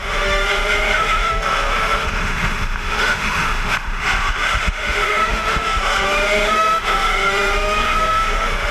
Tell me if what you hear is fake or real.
fake